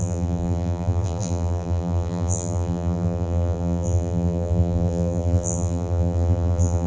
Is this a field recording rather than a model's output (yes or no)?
no